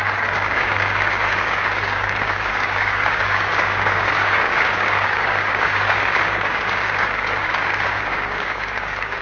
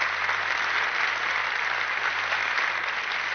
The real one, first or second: second